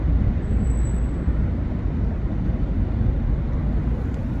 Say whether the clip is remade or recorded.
recorded